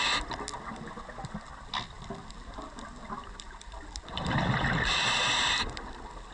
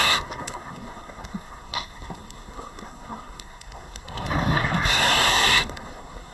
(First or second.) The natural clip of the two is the first